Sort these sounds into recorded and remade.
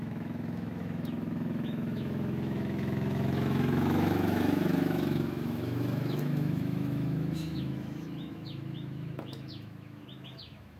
remade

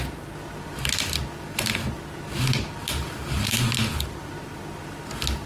recorded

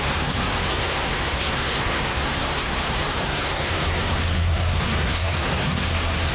remade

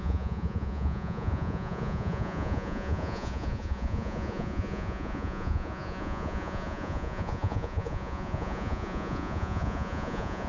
remade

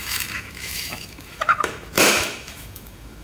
remade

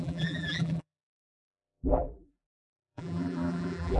remade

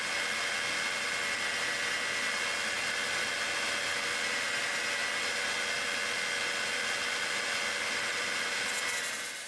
recorded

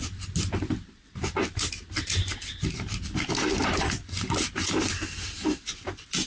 recorded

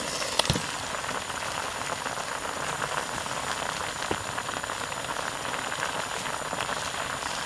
recorded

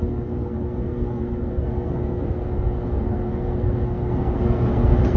remade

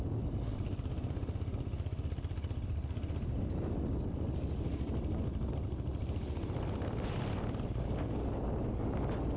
recorded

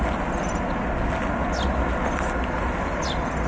recorded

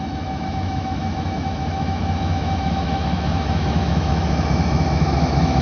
remade